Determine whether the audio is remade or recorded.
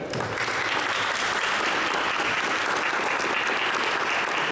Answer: recorded